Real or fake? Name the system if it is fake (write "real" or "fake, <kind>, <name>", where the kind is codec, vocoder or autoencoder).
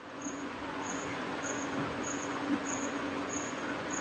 fake, vocoder, Vocos